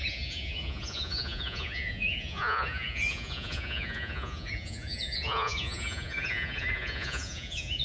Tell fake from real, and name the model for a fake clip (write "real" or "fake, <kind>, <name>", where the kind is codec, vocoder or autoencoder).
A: fake, vocoder, Vocos